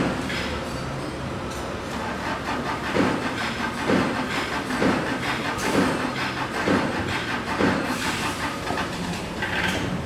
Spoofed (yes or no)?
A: yes